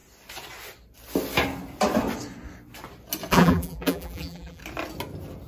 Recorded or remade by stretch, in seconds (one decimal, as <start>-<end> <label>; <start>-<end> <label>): 0.0-3.3 recorded; 3.3-4.6 remade; 4.6-5.5 recorded

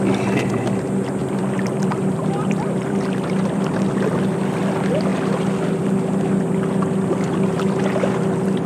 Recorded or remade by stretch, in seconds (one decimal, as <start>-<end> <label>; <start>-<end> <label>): 0.0-1.2 recorded; 1.2-3.9 remade; 3.9-8.7 recorded